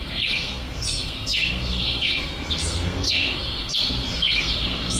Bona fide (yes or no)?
no